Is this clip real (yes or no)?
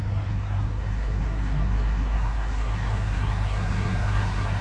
no